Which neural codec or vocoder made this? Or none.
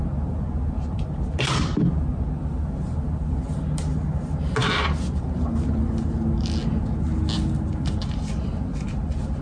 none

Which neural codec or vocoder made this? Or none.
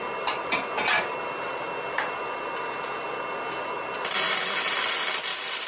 none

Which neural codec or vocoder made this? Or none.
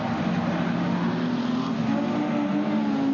none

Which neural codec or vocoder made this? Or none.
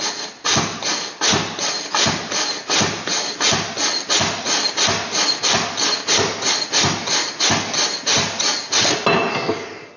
none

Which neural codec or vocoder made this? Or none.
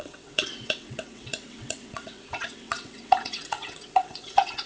vocoder, WaveNeXt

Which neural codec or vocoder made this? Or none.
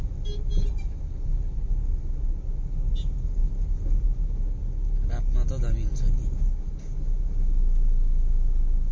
none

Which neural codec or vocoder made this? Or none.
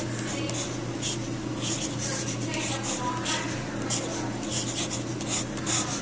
none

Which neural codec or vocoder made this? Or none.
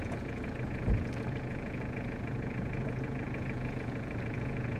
vocoder, Vocos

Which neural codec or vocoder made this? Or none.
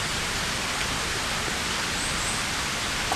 none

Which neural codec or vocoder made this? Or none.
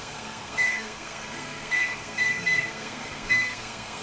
codec, SNAC